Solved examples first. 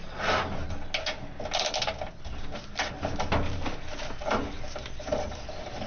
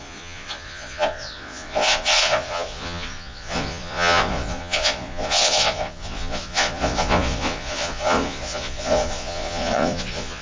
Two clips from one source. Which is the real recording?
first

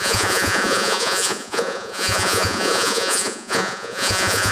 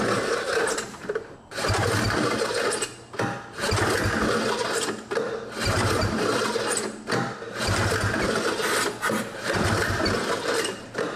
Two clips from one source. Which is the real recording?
second